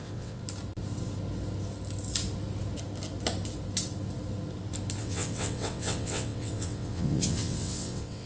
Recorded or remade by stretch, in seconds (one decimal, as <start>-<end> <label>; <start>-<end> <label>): 0.0-0.4 remade; 0.4-5.0 recorded; 5.0-8.3 remade